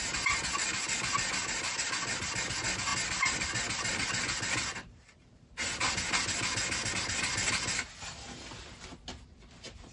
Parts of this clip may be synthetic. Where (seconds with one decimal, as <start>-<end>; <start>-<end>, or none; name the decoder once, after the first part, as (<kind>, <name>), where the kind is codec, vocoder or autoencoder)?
none